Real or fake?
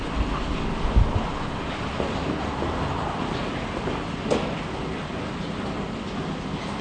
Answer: real